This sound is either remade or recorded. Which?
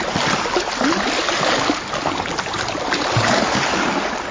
recorded